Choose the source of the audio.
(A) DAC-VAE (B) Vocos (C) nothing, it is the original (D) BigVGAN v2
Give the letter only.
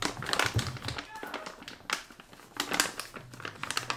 C